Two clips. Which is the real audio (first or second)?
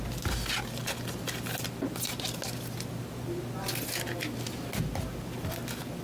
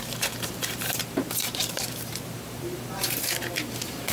first